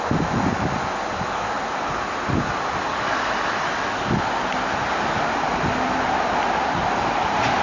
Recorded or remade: recorded